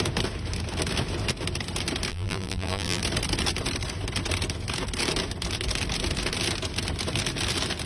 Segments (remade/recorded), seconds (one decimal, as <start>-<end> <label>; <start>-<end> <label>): 0.0-2.1 recorded; 2.1-3.0 remade; 3.0-7.9 recorded